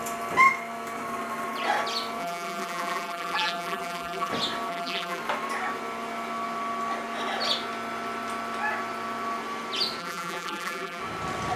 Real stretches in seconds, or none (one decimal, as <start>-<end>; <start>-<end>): 0.0-2.2; 4.3-4.7; 5.2-10.0; 11.0-11.6